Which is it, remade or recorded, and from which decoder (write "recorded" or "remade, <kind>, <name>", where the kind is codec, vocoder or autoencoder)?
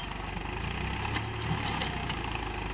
recorded